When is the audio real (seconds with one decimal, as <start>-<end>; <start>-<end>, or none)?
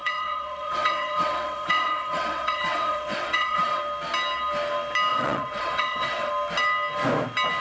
3.8-5.1; 6.3-7.6